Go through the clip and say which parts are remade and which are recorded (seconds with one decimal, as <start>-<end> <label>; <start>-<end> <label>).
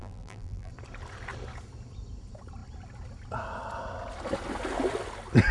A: 0.0-0.7 remade; 0.7-5.5 recorded